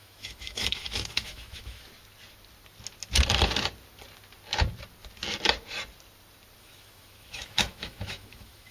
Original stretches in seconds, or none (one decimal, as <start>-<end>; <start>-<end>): 1.9-6.6